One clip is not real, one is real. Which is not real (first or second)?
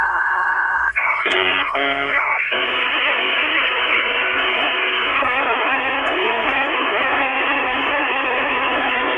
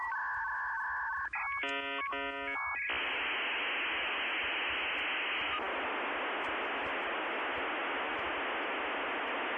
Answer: first